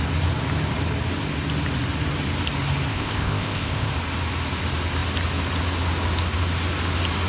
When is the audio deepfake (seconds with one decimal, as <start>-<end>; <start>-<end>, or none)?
2.9-3.9